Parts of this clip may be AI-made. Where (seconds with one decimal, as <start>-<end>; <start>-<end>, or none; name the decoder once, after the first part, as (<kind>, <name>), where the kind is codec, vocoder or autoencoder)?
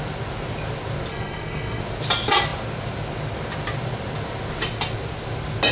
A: 1.1-1.8 (codec, SNAC)